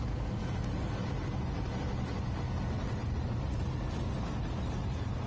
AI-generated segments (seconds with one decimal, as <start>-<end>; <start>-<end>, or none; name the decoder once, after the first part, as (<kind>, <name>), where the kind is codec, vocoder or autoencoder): none